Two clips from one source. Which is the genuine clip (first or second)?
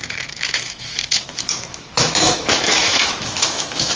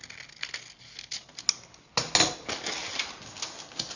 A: second